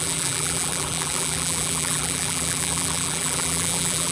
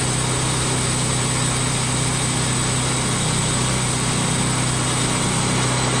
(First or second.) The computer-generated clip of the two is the first